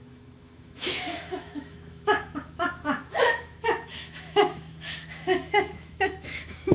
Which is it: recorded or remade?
remade